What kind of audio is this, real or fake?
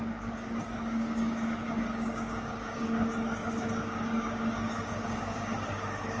fake